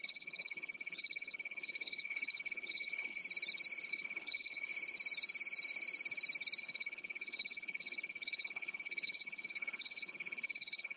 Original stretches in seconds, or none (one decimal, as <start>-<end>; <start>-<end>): 3.2-3.9; 4.7-6.6